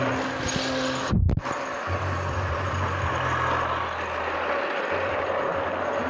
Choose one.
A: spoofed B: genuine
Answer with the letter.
B